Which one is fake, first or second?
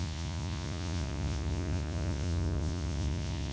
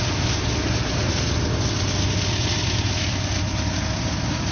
first